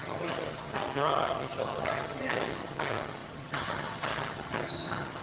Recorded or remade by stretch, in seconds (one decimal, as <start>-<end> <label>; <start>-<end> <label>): 0.0-5.2 remade